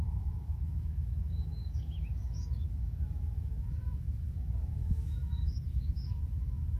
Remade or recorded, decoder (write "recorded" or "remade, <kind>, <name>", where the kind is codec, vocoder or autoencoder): remade, autoencoder, DAC-VAE